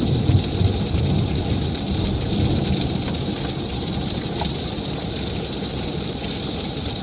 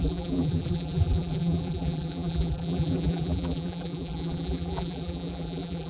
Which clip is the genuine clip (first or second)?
first